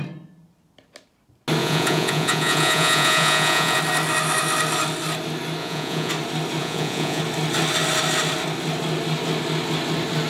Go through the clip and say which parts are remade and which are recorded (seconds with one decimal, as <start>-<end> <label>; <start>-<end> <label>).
0.0-1.6 recorded; 1.6-3.8 remade; 3.8-5.6 recorded; 5.6-6.1 remade; 6.1-6.6 recorded; 6.6-7.2 remade; 7.2-10.3 recorded